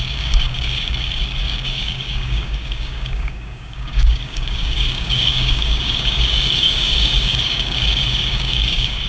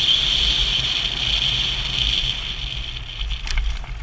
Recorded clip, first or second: second